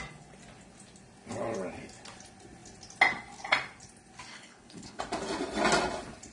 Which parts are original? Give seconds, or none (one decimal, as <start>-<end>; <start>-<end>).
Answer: 0.0-4.3; 5.0-6.3